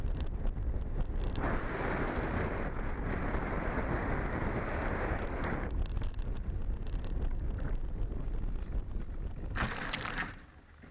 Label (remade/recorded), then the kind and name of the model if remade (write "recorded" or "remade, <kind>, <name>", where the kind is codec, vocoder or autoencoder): recorded